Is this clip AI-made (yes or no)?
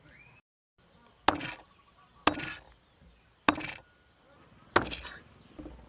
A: no